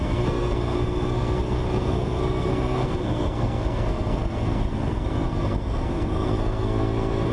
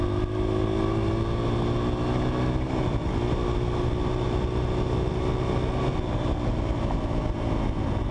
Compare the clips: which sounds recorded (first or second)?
second